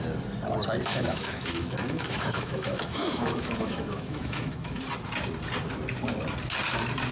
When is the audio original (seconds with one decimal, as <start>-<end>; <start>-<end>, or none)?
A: 0.0-0.9; 4.8-7.1